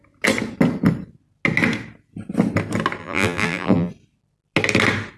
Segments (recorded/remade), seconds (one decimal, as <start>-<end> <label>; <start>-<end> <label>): 0.0-3.0 recorded; 3.0-3.9 remade; 3.9-5.2 recorded